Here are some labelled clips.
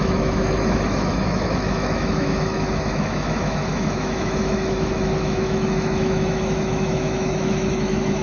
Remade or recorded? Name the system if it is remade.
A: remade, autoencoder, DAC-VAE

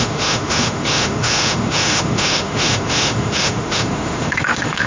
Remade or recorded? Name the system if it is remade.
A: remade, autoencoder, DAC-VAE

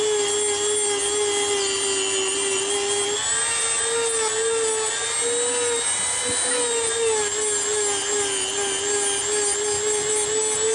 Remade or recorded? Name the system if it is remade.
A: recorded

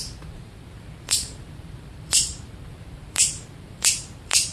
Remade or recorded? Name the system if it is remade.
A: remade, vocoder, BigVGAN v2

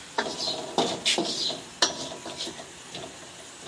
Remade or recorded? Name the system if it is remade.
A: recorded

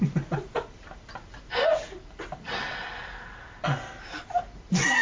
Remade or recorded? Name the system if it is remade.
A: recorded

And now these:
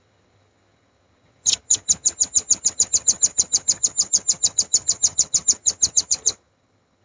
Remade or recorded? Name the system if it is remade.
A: remade, vocoder, HiFi-GAN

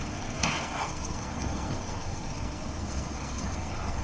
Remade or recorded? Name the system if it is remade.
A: remade, codec, SNAC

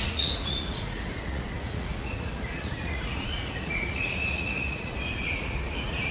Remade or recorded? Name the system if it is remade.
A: remade, vocoder, Vocos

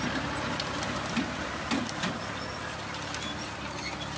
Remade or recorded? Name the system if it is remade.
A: recorded